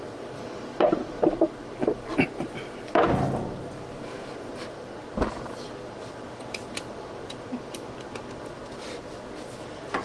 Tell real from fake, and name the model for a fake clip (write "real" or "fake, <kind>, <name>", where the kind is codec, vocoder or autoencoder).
real